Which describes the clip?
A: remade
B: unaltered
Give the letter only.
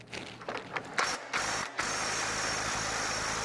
B